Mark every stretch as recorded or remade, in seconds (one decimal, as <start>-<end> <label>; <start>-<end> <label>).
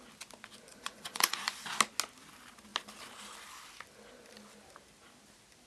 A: 0.0-0.7 recorded; 0.7-1.6 remade; 1.6-5.7 recorded